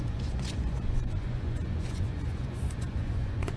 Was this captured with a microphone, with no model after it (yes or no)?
no